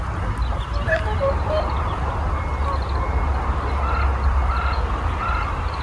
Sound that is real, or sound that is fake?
real